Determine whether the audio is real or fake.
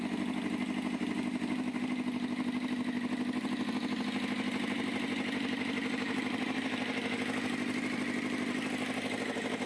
real